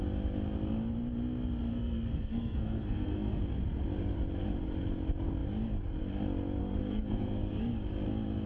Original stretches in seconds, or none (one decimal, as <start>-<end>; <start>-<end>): 0.0-1.7; 3.4-6.6; 7.6-8.5